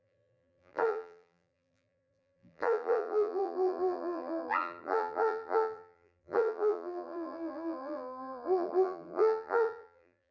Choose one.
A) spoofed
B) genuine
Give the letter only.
A